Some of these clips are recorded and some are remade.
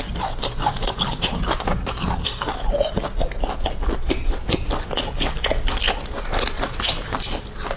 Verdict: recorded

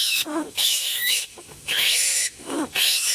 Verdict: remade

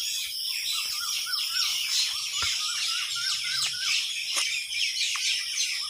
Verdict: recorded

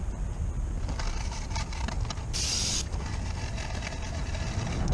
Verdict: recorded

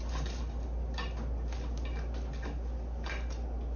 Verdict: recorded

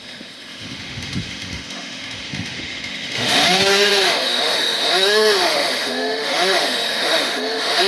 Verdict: remade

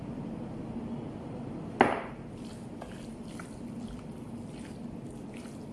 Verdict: recorded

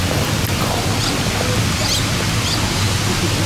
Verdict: recorded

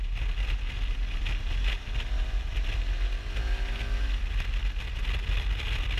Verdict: recorded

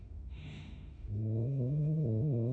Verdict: remade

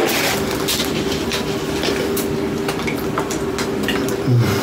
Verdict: recorded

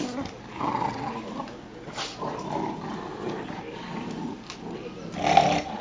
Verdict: recorded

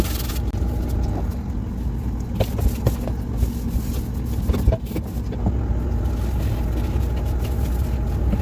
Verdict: recorded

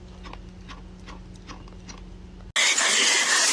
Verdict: recorded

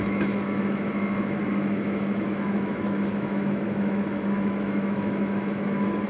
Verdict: remade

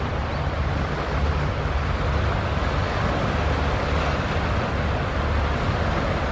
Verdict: recorded